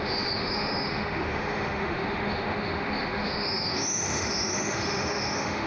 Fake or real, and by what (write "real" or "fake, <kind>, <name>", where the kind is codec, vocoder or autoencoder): fake, autoencoder, DAC-VAE